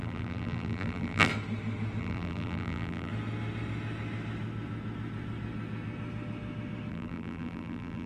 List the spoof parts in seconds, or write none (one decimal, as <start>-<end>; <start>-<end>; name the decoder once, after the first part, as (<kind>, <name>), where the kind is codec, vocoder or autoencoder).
0.0-1.3 (vocoder, BigVGAN v2); 2.0-3.1; 6.9-8.1